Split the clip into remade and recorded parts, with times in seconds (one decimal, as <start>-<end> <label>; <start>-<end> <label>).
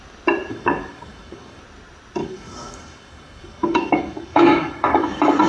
0.0-0.5 recorded; 0.5-1.6 remade; 1.6-2.2 recorded; 2.2-5.5 remade